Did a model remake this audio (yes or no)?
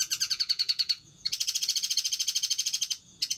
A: yes